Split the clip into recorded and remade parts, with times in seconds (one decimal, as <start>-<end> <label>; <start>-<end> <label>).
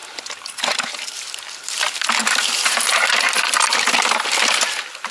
0.0-2.3 remade; 2.3-5.1 recorded